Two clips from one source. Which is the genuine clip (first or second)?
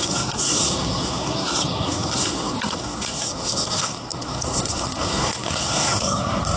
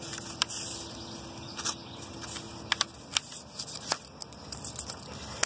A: second